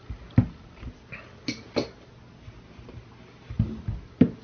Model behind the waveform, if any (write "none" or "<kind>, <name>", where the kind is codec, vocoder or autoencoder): none